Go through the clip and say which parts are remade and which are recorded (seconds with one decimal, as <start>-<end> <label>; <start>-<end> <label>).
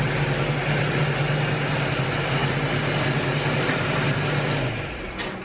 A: 0.0-5.4 recorded